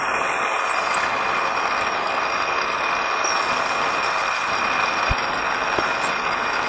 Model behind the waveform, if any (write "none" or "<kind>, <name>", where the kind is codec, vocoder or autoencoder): none